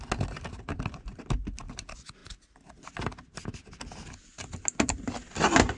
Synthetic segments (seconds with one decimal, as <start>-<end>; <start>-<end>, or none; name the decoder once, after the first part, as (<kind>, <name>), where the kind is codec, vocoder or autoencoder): none